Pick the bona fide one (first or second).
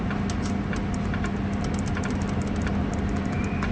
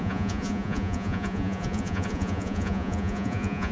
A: first